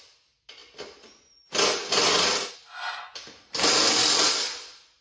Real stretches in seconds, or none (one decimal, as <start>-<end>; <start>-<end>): 0.0-5.0